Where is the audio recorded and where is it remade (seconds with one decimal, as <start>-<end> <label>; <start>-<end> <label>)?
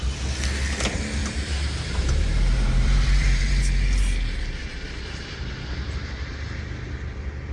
0.0-1.2 recorded; 1.2-3.6 remade; 3.6-4.6 recorded; 4.6-5.5 remade; 5.5-7.5 recorded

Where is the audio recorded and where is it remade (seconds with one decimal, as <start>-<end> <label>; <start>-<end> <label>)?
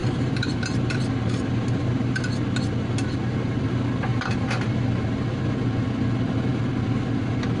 0.0-2.3 remade; 2.3-4.1 recorded; 4.1-5.6 remade; 5.6-7.6 recorded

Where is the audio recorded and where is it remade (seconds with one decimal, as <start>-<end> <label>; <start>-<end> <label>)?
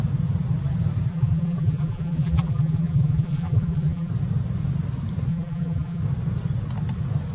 0.0-1.1 recorded; 1.1-4.1 remade; 4.1-5.3 recorded; 5.3-6.0 remade; 6.0-7.3 recorded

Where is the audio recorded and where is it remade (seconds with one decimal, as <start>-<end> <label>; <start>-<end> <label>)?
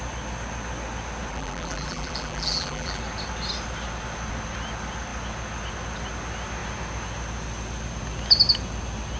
0.0-1.3 recorded; 1.3-3.0 remade; 3.0-9.2 recorded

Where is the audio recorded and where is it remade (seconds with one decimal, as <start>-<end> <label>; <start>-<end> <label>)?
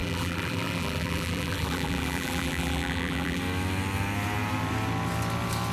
0.0-3.4 remade; 3.4-5.7 recorded